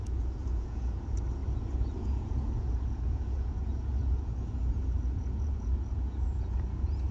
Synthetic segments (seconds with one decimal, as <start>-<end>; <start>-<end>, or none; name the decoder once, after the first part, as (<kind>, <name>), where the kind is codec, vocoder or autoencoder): 0.0-7.1 (vocoder, Vocos)